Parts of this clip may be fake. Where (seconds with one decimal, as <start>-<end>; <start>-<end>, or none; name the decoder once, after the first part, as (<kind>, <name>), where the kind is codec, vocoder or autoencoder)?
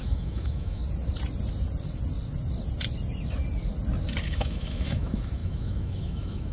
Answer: 0.0-0.8 (autoencoder, DAC-VAE); 4.2-6.5